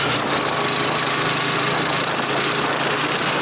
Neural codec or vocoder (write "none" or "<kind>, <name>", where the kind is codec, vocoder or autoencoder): none